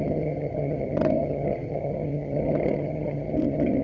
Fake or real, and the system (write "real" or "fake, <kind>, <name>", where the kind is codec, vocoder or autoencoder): fake, vocoder, HiFi-GAN